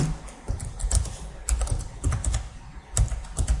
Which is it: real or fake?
real